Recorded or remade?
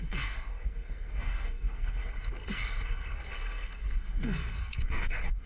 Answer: remade